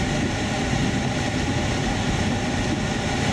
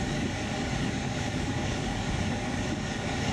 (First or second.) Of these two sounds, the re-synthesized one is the second